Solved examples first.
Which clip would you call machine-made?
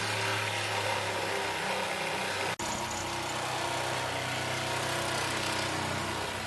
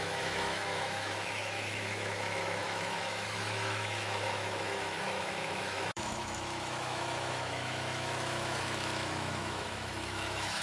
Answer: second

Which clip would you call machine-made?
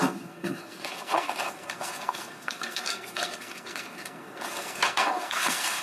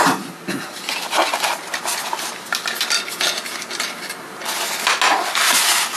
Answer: first